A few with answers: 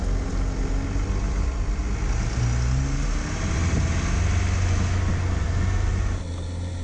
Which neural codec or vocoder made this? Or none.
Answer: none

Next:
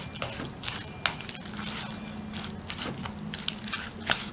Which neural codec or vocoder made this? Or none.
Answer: none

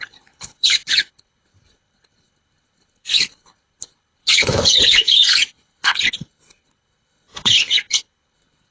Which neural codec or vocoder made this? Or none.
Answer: codec, HILCodec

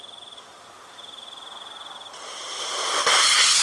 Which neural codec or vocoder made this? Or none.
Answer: none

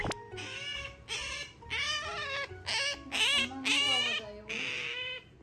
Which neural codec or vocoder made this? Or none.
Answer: none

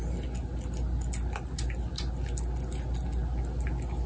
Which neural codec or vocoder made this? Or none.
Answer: none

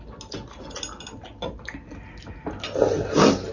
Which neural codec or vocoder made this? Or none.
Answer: none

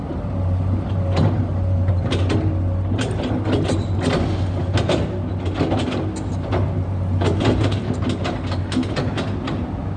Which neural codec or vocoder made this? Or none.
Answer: none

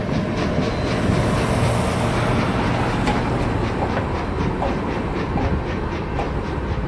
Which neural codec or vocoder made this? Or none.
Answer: none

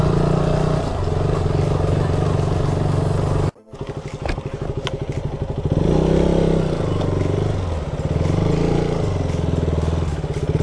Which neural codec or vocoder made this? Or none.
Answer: none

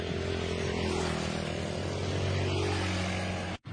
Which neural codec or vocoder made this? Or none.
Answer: none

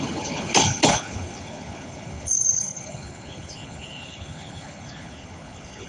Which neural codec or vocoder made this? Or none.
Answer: codec, HILCodec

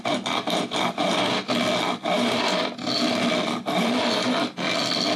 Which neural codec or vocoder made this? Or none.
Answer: none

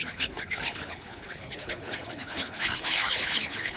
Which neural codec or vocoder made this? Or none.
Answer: codec, HILCodec